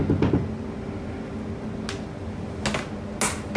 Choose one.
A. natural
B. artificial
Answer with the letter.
A